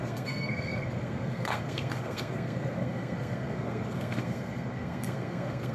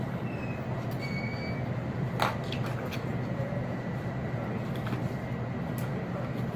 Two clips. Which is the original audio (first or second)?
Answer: second